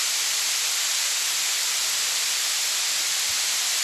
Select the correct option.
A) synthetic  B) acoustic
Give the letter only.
B